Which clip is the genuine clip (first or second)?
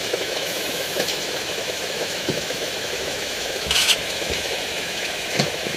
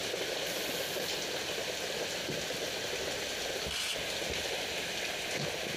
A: second